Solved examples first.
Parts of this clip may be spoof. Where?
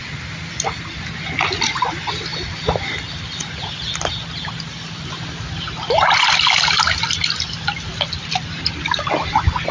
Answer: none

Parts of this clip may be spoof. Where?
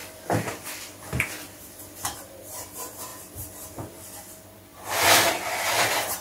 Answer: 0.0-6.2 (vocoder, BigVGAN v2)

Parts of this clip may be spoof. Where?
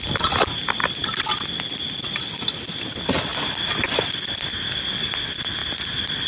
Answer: none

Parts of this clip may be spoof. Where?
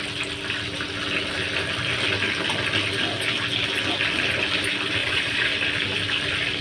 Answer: 5.0-5.5 (vocoder, Vocos)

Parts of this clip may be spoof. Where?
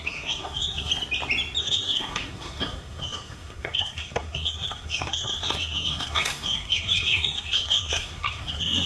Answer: 0.0-0.9 (codec, SNAC); 1.6-8.9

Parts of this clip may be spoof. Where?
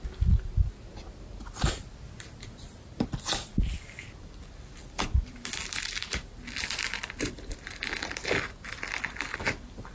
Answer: none